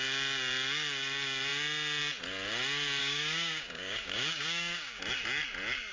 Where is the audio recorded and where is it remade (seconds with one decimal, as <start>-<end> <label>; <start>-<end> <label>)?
0.0-3.0 recorded; 3.0-5.0 remade; 5.0-5.9 recorded